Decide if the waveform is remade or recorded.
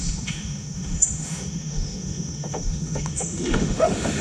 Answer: remade